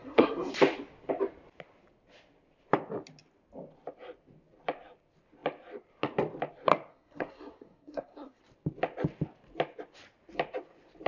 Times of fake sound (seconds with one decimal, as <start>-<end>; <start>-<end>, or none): 0.0-0.5; 6.9-8.4